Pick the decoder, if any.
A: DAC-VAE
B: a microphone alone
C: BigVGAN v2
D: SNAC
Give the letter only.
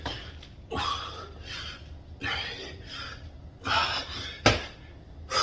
B